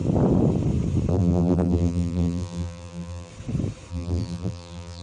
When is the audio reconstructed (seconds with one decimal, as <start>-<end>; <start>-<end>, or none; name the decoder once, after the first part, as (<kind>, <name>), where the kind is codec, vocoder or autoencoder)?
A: 1.1-3.3 (vocoder, BigVGAN v2); 3.9-5.0